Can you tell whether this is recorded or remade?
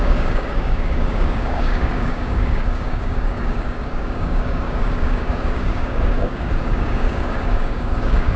remade